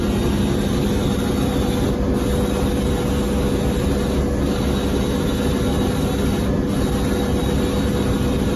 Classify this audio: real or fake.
real